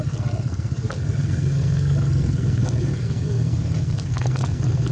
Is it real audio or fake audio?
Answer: fake